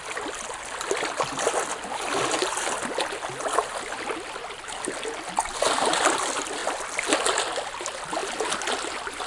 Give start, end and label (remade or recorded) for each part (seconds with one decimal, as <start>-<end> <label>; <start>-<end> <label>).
0.0-9.3 recorded